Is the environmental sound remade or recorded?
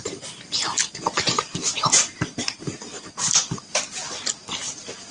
recorded